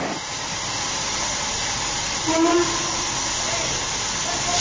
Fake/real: real